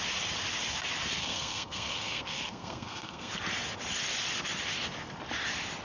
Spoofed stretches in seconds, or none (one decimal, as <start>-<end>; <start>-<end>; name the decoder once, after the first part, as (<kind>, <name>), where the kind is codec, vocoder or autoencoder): 1.2-3.3 (codec, SNAC)

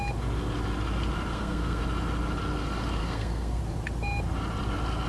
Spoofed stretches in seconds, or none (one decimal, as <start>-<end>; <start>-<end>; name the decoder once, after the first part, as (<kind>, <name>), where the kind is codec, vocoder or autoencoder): 1.3-1.8 (codec, SNAC); 3.0-3.6

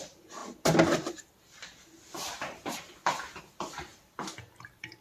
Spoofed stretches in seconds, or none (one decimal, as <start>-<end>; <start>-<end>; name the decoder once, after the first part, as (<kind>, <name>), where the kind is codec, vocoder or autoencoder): none

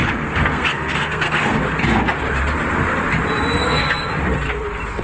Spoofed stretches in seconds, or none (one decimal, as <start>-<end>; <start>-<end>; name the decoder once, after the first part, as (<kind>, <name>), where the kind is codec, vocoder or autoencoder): 0.0-1.6 (codec, SNAC); 3.6-4.1

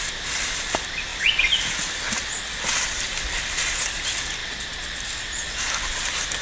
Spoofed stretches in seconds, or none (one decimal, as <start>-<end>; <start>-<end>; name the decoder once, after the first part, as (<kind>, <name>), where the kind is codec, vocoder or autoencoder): none

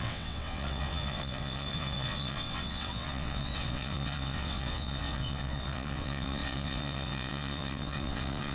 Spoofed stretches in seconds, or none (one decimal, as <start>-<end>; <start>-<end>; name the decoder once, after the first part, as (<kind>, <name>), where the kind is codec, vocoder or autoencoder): 0.0-8.5 (vocoder, WaveNeXt)

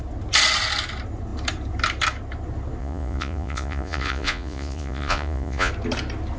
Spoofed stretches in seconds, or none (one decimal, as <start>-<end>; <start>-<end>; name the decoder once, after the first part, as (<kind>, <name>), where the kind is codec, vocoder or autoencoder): 2.8-5.7 (vocoder, Vocos)

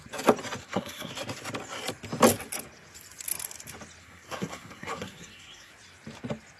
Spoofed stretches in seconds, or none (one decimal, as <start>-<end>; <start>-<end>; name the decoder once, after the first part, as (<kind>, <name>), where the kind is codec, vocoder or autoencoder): 0.6-1.1 (codec, SNAC); 4.0-5.7